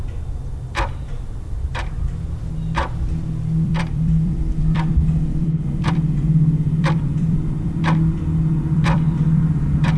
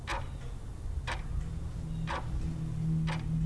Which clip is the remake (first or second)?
first